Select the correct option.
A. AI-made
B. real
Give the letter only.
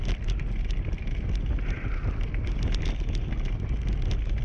B